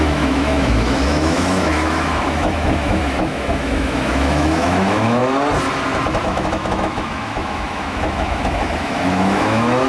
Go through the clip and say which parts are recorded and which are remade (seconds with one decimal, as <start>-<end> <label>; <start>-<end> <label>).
0.0-5.2 remade; 5.2-6.2 recorded; 6.2-9.9 remade